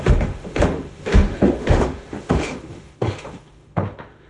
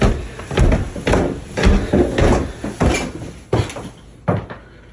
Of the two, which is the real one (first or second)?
second